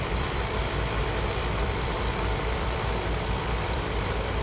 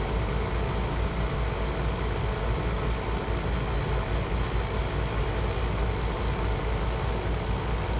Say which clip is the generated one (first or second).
first